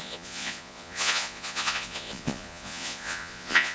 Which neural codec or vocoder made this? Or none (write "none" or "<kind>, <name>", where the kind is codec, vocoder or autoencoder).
vocoder, Vocos